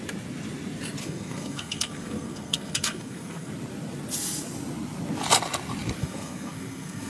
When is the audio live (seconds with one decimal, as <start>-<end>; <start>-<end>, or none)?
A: 0.0-1.0; 3.5-6.0